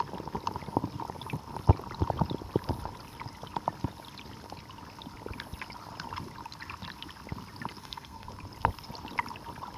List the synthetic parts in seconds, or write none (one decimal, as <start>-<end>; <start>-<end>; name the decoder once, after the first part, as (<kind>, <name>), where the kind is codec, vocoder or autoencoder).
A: 7.8-8.3 (codec, SNAC)